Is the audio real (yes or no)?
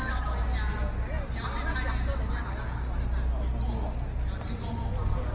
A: yes